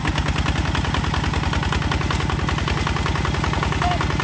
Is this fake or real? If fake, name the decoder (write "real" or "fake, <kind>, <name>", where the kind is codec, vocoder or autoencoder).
real